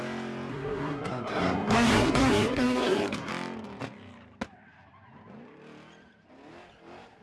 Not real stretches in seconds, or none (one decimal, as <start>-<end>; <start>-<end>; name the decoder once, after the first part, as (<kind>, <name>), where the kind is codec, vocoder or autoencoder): 0.5-3.3 (codec, SNAC)